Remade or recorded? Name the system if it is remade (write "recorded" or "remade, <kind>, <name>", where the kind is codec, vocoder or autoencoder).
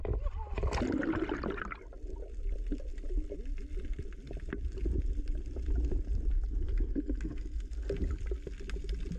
recorded